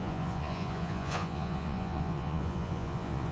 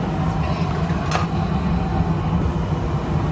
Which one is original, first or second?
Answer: second